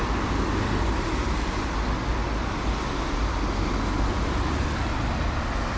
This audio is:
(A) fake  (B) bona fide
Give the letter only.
B